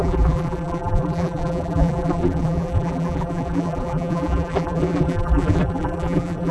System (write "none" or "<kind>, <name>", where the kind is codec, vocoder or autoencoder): vocoder, BigVGAN v2